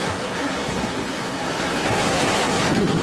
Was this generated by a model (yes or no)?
yes